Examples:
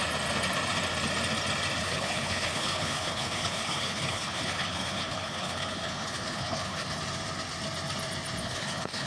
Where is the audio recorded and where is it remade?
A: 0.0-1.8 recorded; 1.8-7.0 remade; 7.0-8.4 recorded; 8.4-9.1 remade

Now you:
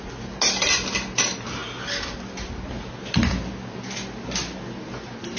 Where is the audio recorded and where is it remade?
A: 0.0-5.4 recorded

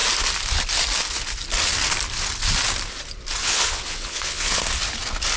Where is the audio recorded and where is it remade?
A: 0.0-3.4 recorded; 3.4-4.6 remade; 4.6-5.4 recorded

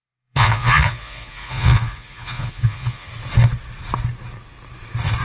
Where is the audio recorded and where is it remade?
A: 0.0-3.1 remade; 3.1-5.2 recorded

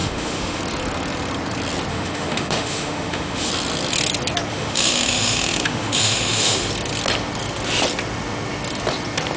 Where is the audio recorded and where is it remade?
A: 0.0-0.6 remade; 0.6-1.9 recorded; 1.9-3.5 remade; 3.5-4.5 recorded; 4.5-6.7 remade; 6.7-9.4 recorded